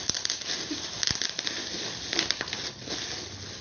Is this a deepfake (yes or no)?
no